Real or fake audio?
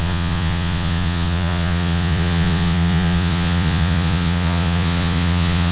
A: fake